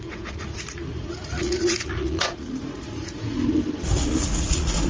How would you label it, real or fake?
fake